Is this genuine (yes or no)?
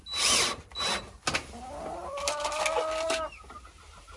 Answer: yes